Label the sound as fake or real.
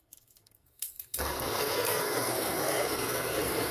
fake